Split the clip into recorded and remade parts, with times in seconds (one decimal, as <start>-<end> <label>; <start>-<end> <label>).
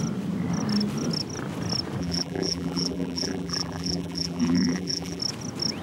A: 0.0-2.0 recorded; 2.0-5.2 remade; 5.2-5.8 recorded